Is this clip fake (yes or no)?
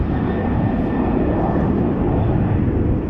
no